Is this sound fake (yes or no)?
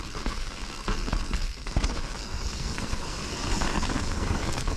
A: yes